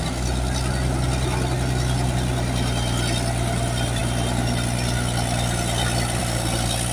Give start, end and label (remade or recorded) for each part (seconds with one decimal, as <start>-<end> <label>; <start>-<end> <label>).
0.0-6.9 recorded